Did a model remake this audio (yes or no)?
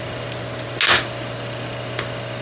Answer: no